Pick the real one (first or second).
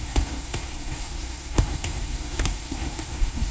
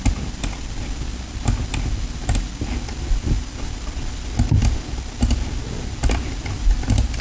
second